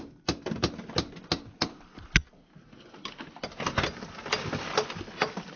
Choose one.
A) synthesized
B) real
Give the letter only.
B